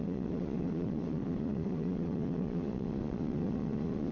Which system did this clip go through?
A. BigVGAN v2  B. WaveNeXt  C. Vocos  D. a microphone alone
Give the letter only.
C